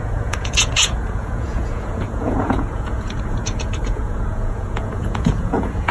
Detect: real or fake fake